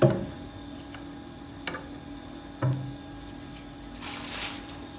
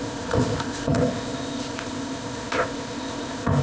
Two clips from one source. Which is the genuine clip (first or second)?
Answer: first